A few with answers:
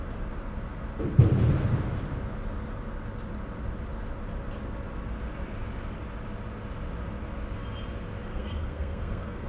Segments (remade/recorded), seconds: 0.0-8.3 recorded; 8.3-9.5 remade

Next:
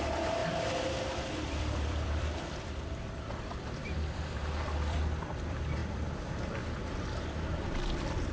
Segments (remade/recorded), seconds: 0.0-0.4 remade; 0.4-1.3 recorded; 1.3-8.3 remade

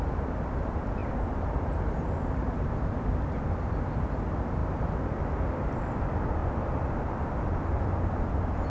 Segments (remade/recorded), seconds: 0.0-1.0 recorded; 1.0-3.8 remade; 3.8-6.4 recorded; 6.4-7.9 remade; 7.9-8.7 recorded

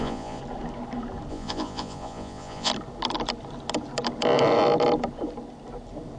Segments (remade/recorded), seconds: 0.0-0.4 remade; 0.4-1.3 recorded; 1.3-2.7 remade; 2.7-6.2 recorded

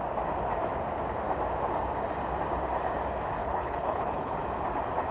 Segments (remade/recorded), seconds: 0.0-3.4 recorded; 3.4-4.3 remade; 4.3-5.1 recorded

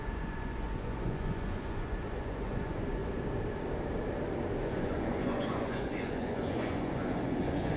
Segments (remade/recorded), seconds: 0.0-3.0 remade; 3.0-4.6 recorded; 4.6-7.8 remade